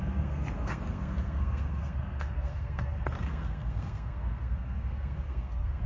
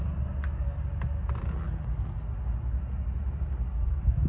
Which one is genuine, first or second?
second